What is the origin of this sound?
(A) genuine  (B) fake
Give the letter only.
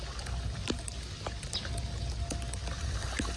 A